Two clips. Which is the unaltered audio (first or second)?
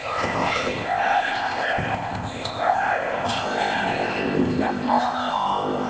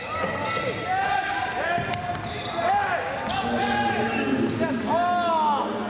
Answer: second